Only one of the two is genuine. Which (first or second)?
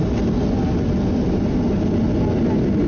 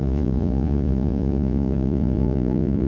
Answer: first